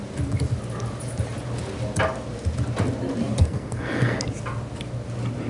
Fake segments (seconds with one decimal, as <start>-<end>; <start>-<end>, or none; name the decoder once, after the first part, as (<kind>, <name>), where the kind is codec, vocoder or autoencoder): 3.4-4.2 (codec, SNAC)

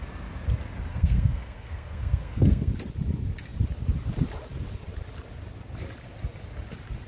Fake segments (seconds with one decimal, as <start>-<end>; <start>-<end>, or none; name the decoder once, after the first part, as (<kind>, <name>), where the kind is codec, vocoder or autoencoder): 0.9-2.7 (codec, SNAC)

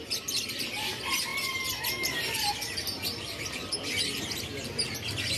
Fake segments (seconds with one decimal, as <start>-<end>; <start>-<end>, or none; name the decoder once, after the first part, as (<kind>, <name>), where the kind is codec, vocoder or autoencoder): none

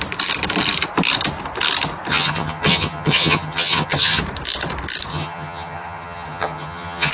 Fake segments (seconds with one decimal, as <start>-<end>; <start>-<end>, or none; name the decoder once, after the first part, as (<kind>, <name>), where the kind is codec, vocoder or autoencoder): 2.1-4.2 (vocoder, HiFi-GAN); 5.1-7.1